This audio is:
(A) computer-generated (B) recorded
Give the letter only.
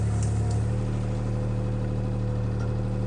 B